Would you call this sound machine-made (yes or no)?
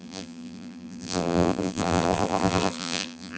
yes